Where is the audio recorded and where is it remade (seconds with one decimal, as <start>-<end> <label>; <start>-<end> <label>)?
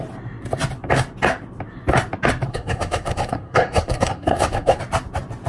0.0-2.5 recorded; 2.5-4.8 remade; 4.8-5.5 recorded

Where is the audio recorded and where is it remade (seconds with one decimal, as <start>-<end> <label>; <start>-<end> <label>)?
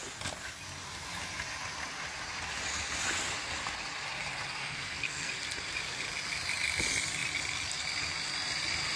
0.0-4.6 recorded; 4.6-5.3 remade; 5.3-9.0 recorded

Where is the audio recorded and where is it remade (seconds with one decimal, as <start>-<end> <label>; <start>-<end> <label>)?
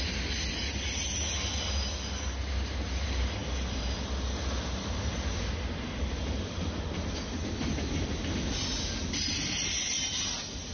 0.0-10.7 recorded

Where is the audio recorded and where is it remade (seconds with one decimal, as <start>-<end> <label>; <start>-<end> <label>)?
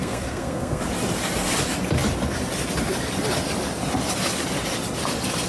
0.0-0.8 remade; 0.8-5.5 recorded